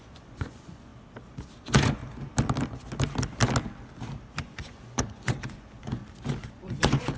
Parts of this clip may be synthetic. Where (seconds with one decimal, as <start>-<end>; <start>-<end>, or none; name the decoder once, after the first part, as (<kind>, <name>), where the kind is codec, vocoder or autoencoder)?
0.0-0.9 (vocoder, Vocos); 1.6-2.0; 4.4-6.0; 6.5-7.2